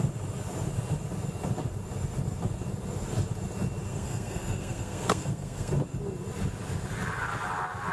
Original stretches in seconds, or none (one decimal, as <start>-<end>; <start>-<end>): 0.0-3.9; 5.7-7.9